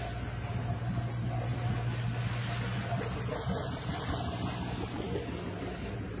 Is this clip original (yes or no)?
yes